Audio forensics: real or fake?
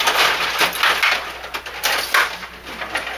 real